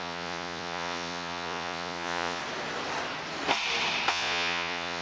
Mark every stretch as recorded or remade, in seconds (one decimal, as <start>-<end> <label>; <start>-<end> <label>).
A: 0.0-2.4 remade; 2.4-4.1 recorded; 4.1-5.0 remade